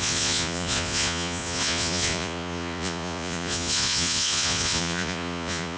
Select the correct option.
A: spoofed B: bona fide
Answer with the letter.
A